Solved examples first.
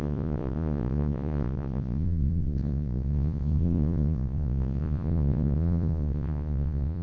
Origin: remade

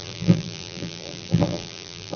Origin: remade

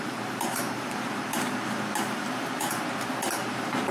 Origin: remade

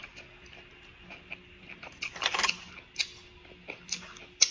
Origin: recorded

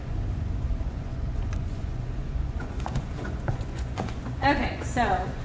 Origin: remade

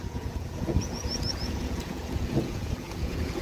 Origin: remade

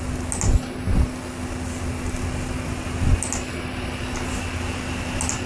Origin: recorded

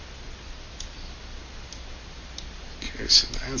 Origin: recorded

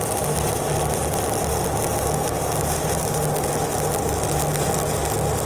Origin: recorded